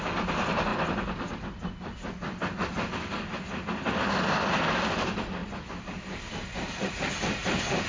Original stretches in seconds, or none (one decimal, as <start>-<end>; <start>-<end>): 0.0-7.9